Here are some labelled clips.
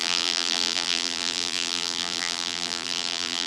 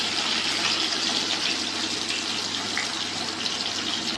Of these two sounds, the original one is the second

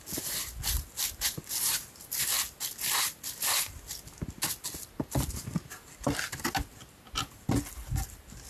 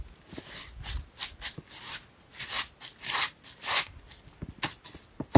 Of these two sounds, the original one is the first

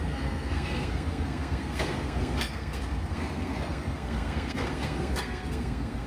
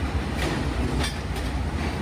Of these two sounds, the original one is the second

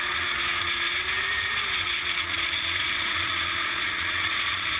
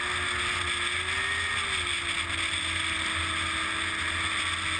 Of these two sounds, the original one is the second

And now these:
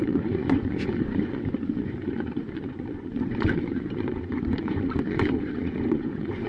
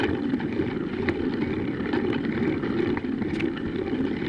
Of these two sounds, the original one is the second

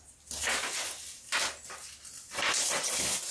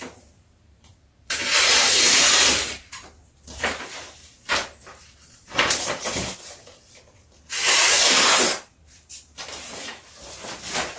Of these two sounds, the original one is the first